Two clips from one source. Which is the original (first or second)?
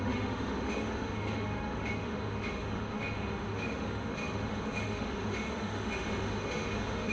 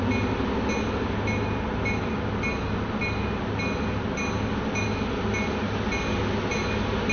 second